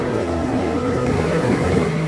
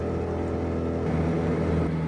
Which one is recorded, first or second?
second